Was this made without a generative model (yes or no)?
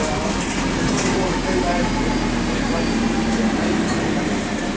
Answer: yes